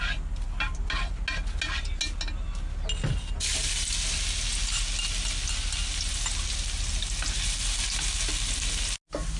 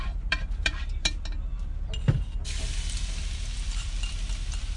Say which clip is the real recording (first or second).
first